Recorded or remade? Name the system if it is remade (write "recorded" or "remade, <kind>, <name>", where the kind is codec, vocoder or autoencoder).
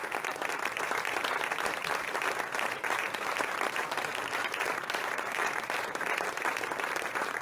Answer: remade, vocoder, BigVGAN v2